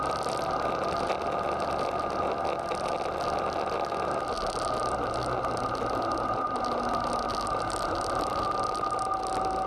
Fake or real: real